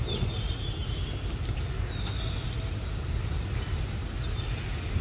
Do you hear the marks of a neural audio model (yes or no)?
no